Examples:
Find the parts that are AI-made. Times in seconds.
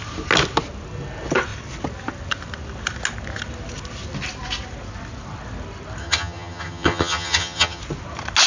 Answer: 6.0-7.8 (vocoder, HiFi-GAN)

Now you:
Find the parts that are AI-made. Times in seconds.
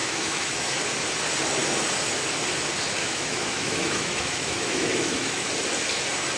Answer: 0.0-0.8 (autoencoder, DAC-VAE); 3.0-5.5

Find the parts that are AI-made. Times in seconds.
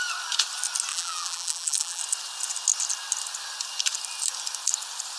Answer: 0.9-2.0 (vocoder, BigVGAN v2)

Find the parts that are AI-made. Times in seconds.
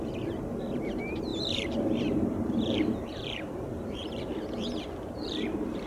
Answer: 0.0-5.9 (vocoder, BigVGAN v2)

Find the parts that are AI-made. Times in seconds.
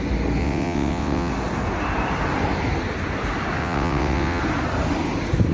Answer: 0.4-1.3 (vocoder, WaveNeXt); 3.6-4.4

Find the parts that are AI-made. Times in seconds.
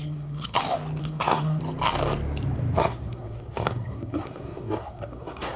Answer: 0.0-0.6 (codec, SNAC); 1.0-1.6; 2.8-5.6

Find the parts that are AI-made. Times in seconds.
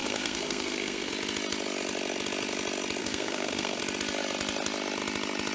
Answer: 0.0-1.1 (codec, SNAC); 3.0-3.8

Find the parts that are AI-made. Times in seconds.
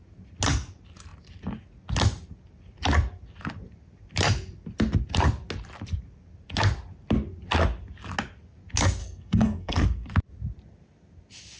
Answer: 9.0-10.1 (codec, SNAC)